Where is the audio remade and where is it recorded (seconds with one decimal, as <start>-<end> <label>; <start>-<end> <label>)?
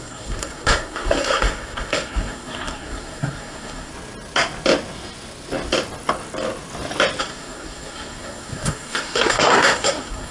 0.0-3.9 remade; 3.9-7.2 recorded; 7.2-10.3 remade